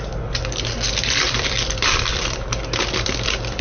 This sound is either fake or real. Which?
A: fake